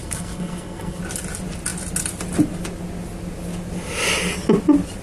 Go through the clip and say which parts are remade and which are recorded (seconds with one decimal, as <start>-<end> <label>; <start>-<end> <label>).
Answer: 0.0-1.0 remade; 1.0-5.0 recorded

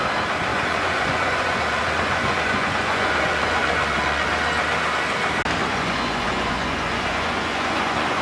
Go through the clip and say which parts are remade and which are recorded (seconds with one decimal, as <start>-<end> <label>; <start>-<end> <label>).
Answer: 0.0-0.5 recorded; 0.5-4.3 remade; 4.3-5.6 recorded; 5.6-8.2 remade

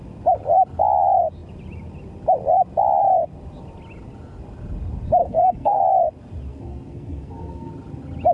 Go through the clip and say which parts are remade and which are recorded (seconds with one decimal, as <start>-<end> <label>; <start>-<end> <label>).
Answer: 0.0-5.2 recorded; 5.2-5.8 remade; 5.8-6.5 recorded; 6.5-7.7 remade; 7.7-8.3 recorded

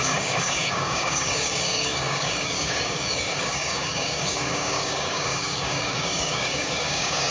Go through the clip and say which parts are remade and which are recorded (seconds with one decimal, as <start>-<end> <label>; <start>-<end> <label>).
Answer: 0.0-7.3 remade

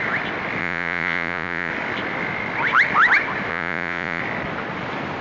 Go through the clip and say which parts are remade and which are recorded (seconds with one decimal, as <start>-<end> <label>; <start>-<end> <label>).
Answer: 0.0-0.6 recorded; 0.6-1.7 remade; 1.7-3.5 recorded; 3.5-4.2 remade; 4.2-5.2 recorded

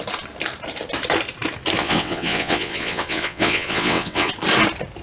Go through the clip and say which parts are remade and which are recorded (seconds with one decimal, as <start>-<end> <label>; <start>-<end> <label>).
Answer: 0.0-1.8 recorded; 1.8-4.3 remade; 4.3-5.0 recorded

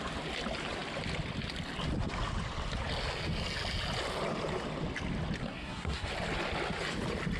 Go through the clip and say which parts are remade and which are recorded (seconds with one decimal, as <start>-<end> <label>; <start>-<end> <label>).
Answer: 0.0-5.4 recorded; 5.4-6.1 remade; 6.1-7.4 recorded